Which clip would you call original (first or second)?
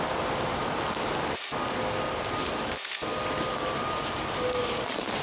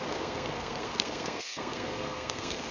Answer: first